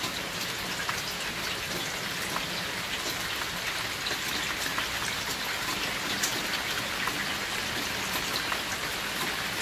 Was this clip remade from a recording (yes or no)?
no